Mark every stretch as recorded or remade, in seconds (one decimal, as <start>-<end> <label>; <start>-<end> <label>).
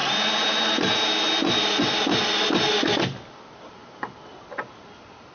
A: 0.0-5.3 recorded